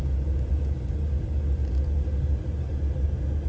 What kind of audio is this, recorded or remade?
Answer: recorded